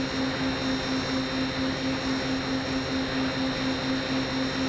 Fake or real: real